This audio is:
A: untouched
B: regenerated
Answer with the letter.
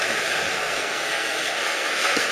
B